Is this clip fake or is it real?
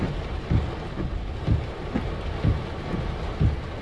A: real